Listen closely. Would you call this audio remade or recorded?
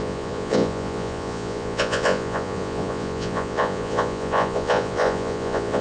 remade